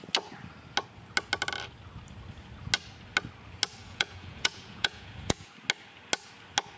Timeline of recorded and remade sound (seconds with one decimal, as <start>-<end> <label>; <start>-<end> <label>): 0.0-3.8 recorded; 3.8-5.5 remade; 5.5-6.8 recorded